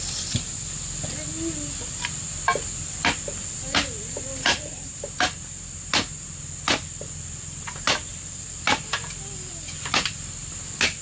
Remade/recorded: recorded